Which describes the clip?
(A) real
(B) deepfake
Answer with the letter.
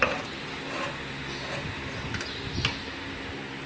A